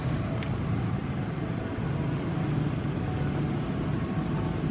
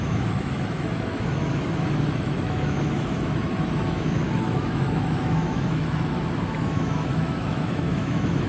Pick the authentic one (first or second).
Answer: first